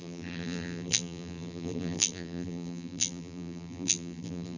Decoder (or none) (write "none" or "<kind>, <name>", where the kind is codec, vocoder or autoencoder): vocoder, BigVGAN v2